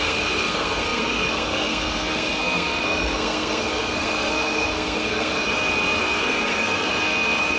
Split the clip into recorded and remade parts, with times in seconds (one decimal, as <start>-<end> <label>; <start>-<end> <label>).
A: 0.0-5.4 remade; 5.4-6.0 recorded; 6.0-7.6 remade